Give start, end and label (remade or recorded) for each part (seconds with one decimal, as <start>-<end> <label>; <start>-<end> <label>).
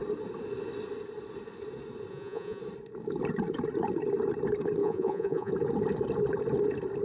0.0-2.1 recorded; 2.1-2.6 remade; 2.6-4.8 recorded; 4.8-5.5 remade; 5.5-7.0 recorded